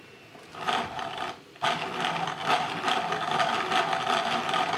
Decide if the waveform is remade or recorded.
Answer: recorded